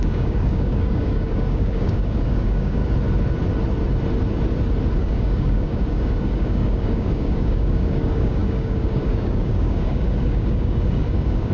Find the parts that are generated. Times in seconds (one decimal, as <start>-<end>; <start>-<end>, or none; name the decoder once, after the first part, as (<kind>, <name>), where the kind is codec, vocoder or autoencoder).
0.0-2.8 (codec, DAC); 5.0-11.5